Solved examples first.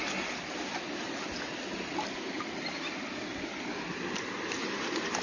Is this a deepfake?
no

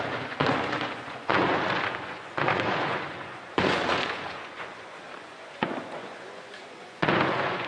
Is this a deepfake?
yes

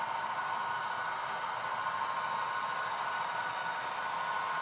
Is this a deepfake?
no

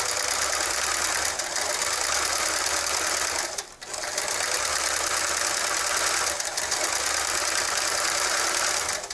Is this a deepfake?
no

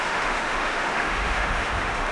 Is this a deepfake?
yes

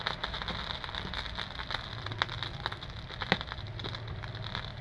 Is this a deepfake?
no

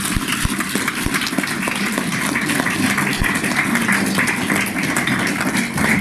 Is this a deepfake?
no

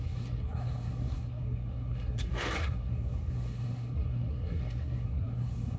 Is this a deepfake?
yes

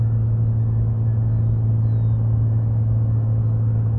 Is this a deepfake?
no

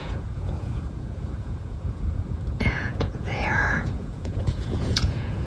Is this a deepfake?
yes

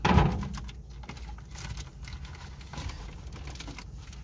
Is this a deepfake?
no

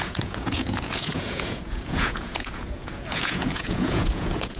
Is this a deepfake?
yes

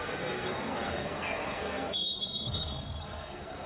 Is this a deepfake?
yes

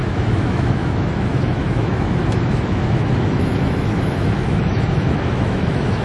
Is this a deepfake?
yes